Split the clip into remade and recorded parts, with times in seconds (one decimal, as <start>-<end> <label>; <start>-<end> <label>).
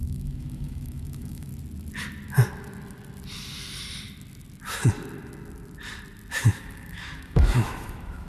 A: 0.0-1.5 remade; 1.5-6.4 recorded; 6.4-8.3 remade